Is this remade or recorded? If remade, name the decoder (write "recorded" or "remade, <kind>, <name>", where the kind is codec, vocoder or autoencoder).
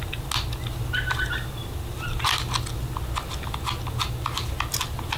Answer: recorded